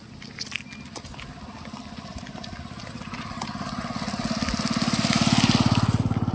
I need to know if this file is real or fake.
real